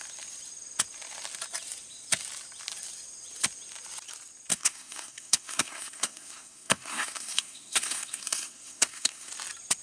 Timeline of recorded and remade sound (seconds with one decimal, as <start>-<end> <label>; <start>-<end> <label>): 0.0-4.5 recorded; 4.5-9.3 remade; 9.3-9.8 recorded